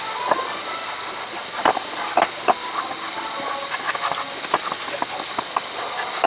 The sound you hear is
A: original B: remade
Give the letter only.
A